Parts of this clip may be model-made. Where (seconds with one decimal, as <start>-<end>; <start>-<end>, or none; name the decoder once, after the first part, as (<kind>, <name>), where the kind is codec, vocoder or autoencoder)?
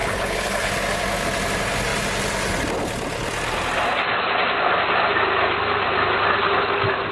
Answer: 0.0-0.7 (codec, HILCodec)